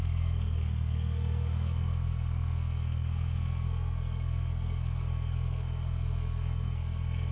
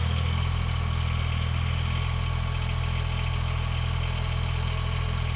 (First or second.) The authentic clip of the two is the second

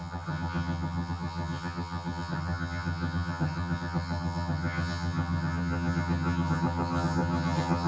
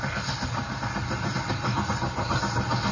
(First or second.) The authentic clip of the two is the second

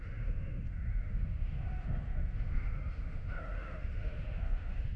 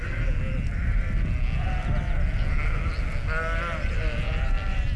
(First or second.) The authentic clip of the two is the second